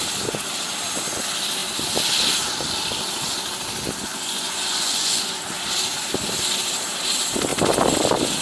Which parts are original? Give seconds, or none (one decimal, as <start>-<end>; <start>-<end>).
0.0-4.1; 5.4-8.4